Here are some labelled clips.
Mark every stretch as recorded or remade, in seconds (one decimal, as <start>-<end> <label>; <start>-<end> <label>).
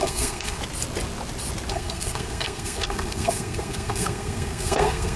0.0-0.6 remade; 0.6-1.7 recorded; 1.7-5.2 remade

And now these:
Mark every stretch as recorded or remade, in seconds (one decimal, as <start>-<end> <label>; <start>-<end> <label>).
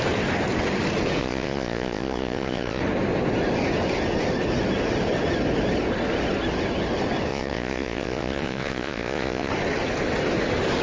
0.0-1.2 recorded; 1.2-2.8 remade; 2.8-7.3 recorded; 7.3-9.5 remade; 9.5-10.8 recorded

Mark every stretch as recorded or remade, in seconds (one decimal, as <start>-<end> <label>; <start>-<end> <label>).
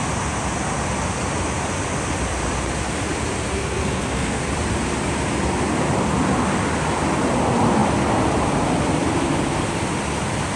0.0-3.5 recorded; 3.5-4.4 remade; 4.4-10.6 recorded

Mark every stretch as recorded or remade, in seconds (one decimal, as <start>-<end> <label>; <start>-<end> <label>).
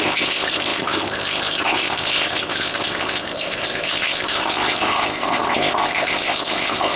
0.0-7.0 remade